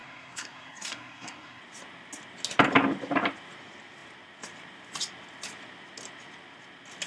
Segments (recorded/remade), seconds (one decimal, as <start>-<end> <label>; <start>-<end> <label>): 0.0-1.6 remade; 1.6-7.1 recorded